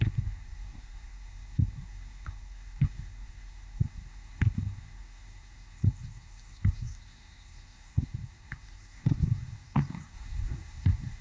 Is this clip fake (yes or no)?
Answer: yes